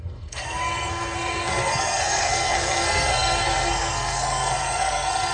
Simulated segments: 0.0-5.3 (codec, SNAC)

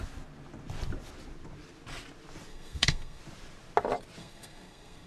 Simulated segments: 2.5-3.2 (codec, SNAC); 4.2-5.1

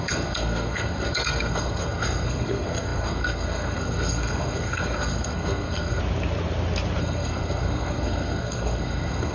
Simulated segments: 0.0-6.0 (codec, SNAC); 7.0-9.3

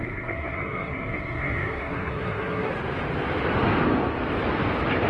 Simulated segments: 0.0-2.7 (codec, SNAC)

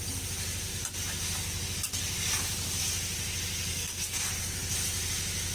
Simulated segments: 3.7-4.3 (codec, SNAC)

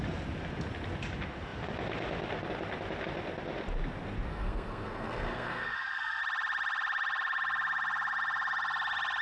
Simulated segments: 4.3-6.2 (codec, SNAC)